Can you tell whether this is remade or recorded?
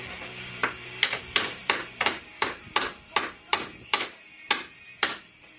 remade